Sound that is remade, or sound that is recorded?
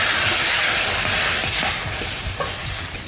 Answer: recorded